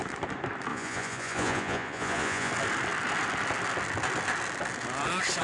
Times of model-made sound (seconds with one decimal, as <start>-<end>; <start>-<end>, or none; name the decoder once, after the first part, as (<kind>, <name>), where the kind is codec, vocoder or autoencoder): 0.7-2.5 (vocoder, Vocos)